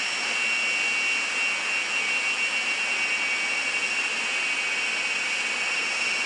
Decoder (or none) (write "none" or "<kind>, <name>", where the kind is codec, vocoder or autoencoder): none